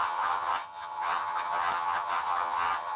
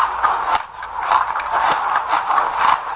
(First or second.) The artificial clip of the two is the first